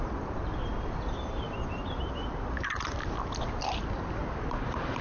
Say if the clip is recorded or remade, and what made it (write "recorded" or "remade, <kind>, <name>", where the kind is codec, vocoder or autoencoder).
recorded